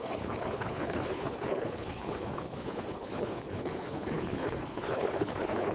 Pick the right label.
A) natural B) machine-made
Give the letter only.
B